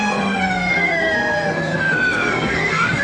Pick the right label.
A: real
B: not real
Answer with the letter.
B